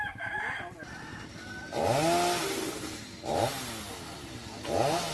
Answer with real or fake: real